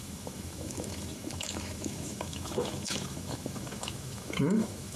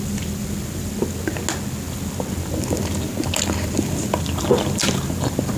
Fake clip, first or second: first